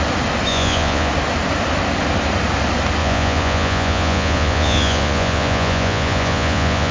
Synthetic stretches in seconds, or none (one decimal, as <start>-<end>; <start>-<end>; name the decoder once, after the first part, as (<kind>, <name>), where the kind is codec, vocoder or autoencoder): 0.5-1.1 (vocoder, Vocos); 3.0-6.9